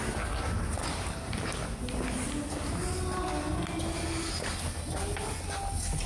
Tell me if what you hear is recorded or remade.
recorded